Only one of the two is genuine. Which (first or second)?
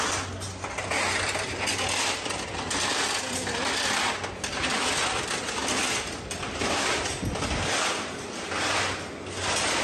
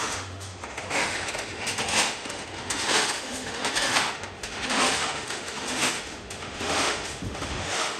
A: first